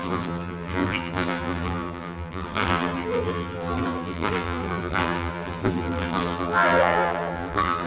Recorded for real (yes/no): no